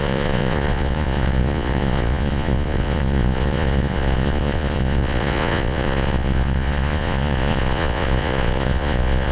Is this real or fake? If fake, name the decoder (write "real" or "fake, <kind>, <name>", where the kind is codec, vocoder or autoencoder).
fake, vocoder, Vocos